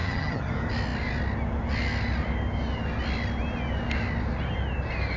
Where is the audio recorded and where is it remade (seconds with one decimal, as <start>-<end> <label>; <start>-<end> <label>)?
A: 0.0-0.5 remade; 0.5-5.2 recorded